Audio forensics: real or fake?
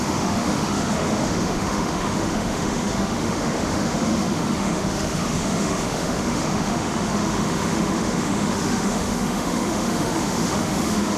fake